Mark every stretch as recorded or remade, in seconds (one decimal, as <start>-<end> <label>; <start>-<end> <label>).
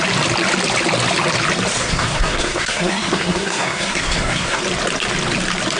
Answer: 0.0-1.8 recorded; 1.8-4.6 remade; 4.6-5.8 recorded